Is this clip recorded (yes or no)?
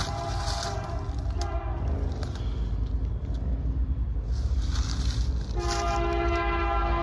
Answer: yes